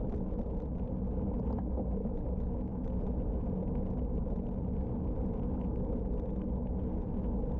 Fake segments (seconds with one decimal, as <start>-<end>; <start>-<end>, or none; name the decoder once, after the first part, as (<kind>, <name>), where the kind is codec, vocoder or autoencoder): none